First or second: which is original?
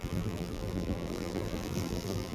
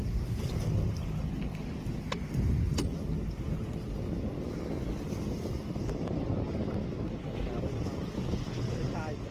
second